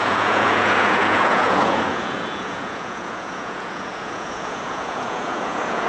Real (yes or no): no